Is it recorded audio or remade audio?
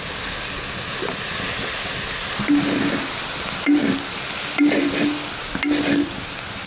recorded